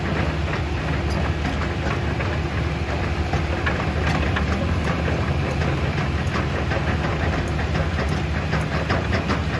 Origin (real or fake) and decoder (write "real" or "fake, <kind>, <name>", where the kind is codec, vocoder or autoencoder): real